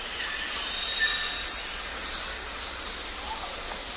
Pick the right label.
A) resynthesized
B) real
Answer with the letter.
B